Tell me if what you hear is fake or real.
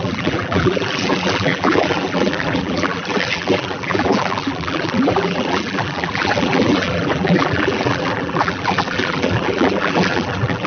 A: fake